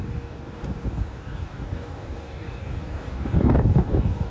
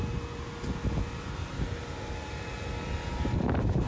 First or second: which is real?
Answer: second